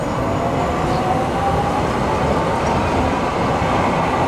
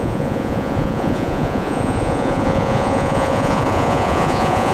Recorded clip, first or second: first